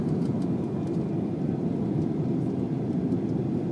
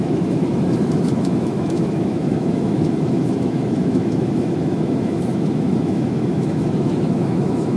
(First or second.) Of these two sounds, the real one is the first